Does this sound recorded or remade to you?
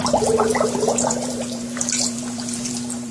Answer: remade